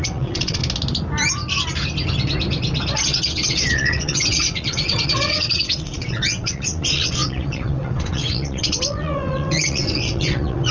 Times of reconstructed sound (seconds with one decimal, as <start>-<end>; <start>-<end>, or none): 0.0-0.6; 3.0-10.7